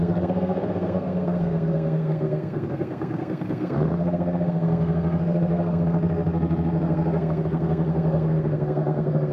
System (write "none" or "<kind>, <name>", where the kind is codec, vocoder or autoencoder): codec, SNAC